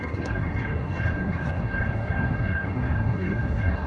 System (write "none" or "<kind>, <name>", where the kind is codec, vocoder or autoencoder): codec, SNAC